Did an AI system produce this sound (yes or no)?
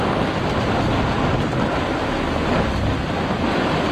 no